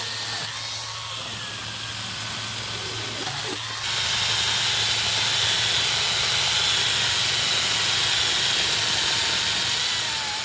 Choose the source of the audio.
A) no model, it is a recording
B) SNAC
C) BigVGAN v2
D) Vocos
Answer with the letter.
A